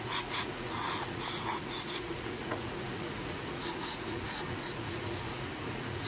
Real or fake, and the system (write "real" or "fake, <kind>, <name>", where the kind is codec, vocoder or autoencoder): fake, vocoder, Vocos